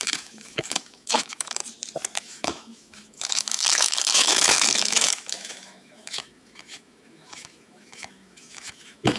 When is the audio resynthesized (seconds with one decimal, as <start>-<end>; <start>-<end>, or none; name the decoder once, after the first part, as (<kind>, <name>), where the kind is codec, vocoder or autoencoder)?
0.0-1.6 (autoencoder, DAC-VAE); 2.2-9.2

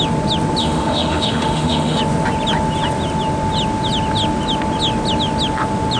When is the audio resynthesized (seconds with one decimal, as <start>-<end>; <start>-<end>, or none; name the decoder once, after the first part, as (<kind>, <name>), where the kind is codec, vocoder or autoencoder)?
0.6-2.0 (autoencoder, DAC-VAE)